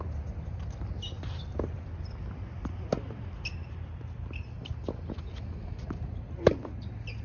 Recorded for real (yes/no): yes